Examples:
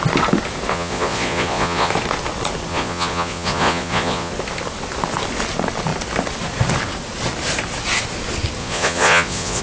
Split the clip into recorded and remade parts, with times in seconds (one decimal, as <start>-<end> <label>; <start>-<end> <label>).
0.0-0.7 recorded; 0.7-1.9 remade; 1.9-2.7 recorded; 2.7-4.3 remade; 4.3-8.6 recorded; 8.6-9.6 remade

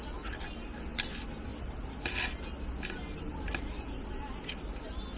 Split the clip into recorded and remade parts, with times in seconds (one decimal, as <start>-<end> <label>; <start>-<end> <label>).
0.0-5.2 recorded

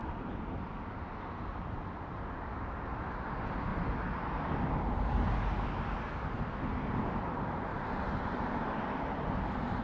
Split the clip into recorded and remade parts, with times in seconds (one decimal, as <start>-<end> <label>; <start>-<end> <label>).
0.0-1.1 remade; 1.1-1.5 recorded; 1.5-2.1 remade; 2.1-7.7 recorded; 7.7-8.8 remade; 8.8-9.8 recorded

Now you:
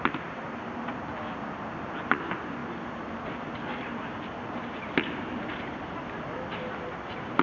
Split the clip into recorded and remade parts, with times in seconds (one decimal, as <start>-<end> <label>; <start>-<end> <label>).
0.0-7.4 recorded

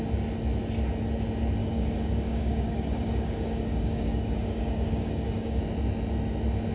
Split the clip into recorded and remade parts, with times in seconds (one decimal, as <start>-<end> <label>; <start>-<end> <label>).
0.0-1.6 recorded; 1.6-5.6 remade; 5.6-6.7 recorded